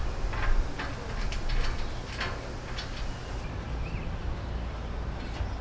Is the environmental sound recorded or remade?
recorded